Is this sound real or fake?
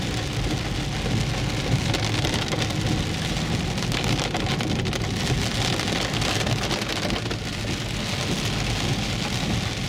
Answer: real